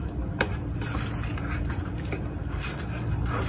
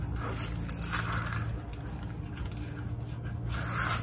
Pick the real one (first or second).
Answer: second